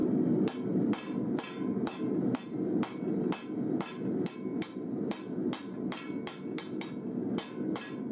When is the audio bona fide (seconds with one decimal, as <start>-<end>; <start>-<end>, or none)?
0.0-8.1